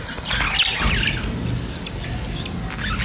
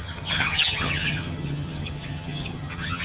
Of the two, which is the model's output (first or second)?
second